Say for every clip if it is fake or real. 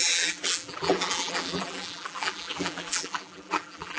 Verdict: fake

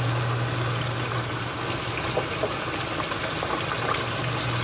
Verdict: fake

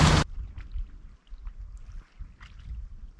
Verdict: real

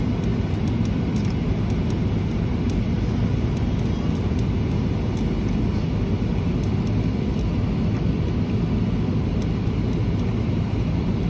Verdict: real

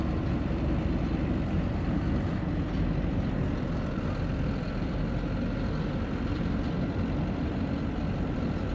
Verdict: fake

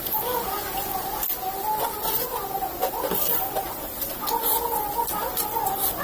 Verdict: real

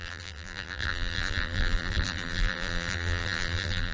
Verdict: fake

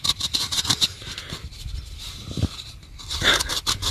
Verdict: fake